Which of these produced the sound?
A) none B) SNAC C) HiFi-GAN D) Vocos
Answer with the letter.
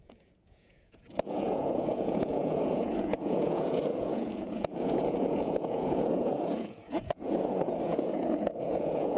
D